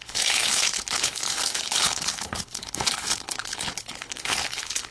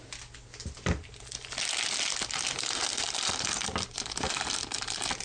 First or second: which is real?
second